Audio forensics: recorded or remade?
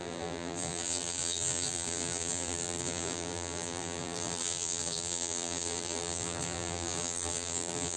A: remade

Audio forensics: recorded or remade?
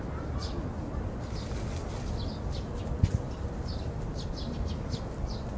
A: recorded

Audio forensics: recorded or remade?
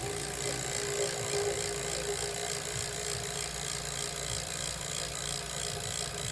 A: recorded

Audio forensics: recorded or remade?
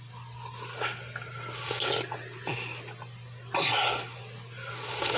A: recorded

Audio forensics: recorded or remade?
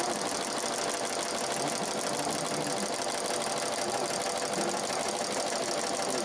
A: recorded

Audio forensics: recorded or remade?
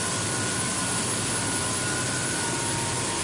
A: recorded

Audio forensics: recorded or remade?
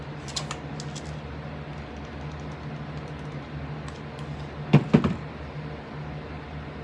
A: recorded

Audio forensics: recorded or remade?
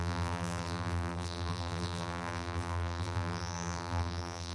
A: remade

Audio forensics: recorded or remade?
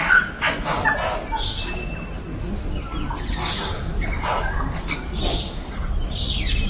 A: recorded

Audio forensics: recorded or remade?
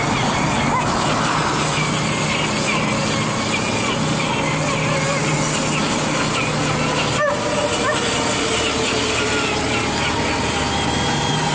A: recorded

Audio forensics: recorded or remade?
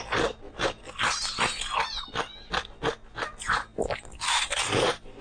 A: recorded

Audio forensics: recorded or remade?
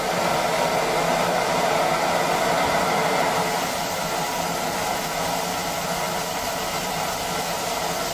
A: recorded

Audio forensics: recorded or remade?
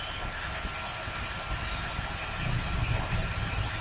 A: recorded